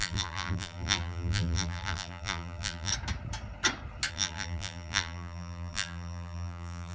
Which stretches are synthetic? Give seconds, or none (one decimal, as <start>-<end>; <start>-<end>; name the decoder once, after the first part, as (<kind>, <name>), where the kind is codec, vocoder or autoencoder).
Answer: 0.0-2.9 (vocoder, BigVGAN v2); 4.1-6.9